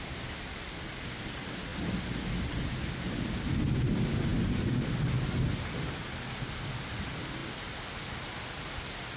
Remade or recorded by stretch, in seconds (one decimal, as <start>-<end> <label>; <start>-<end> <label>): 0.0-0.5 recorded; 0.5-1.1 remade; 1.1-9.2 recorded